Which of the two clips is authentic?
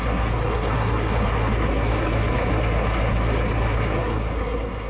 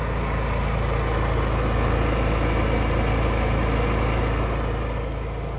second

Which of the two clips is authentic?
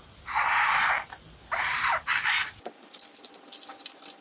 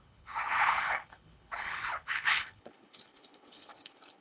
first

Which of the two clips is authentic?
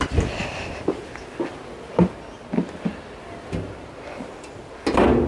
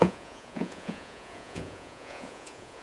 first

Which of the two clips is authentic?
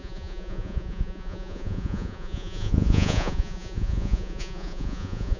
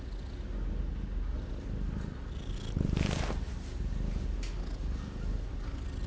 second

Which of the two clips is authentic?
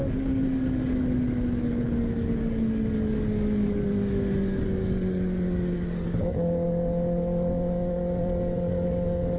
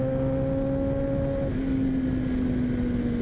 second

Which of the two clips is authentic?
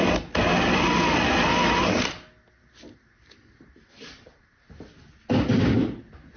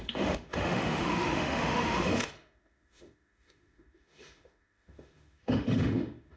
first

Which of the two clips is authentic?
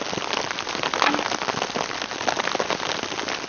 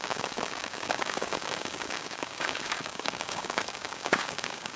first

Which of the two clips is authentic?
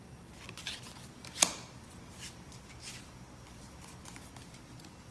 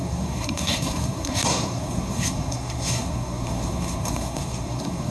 first